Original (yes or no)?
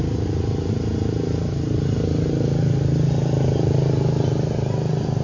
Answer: yes